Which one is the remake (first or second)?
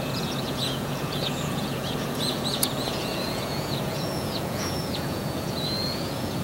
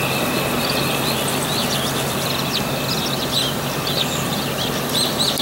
first